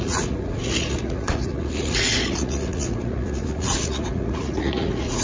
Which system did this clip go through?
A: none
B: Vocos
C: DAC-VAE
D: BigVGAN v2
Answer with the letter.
B